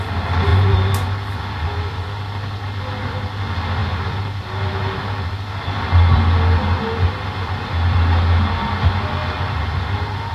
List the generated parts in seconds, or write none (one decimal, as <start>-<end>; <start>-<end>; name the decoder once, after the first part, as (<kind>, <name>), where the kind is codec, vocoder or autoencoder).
none